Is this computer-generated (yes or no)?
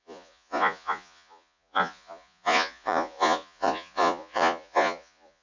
yes